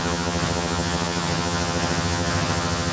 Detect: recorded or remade remade